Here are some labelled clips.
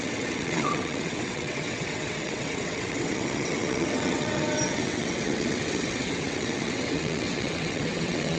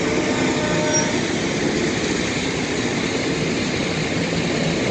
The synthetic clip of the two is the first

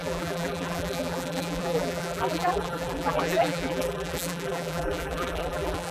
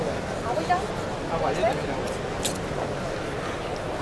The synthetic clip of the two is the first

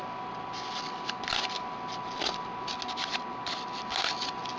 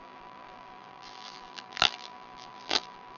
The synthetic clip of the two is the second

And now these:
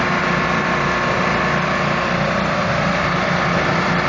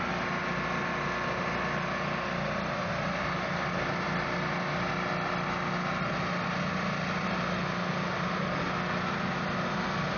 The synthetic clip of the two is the first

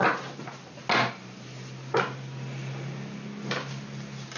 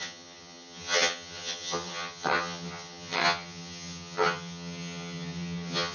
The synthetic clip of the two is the second